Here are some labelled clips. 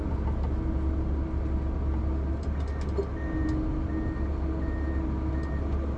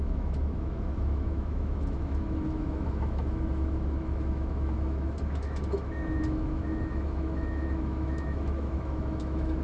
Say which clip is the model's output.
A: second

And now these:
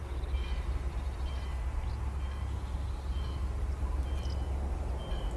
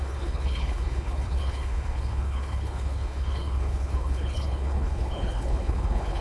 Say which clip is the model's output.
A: second